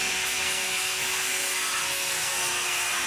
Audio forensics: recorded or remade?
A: remade